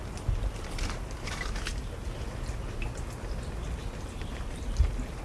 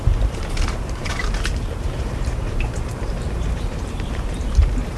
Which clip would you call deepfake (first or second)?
second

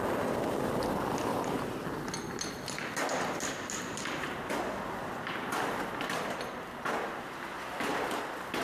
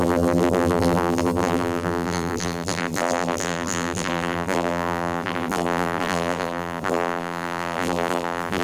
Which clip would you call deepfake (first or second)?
second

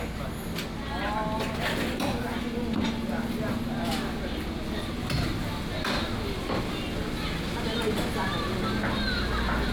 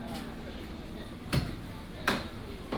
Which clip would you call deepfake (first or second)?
second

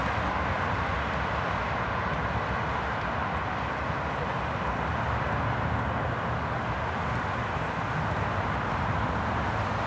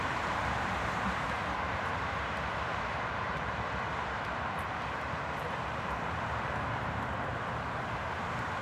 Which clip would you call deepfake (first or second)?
second